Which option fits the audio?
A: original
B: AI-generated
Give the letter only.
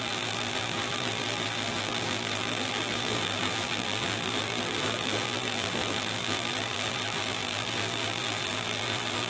B